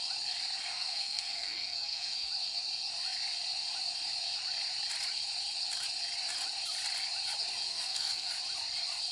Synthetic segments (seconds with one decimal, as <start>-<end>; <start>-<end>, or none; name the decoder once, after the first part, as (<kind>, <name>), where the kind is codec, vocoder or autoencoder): 0.7-2.3 (codec, SNAC); 7.7-8.3